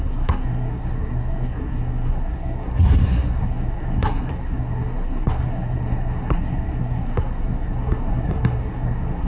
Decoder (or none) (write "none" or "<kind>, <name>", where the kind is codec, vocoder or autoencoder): codec, SNAC